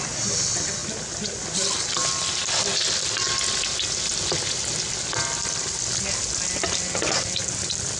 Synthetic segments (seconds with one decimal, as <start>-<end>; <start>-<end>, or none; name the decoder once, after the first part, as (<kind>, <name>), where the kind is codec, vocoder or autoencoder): none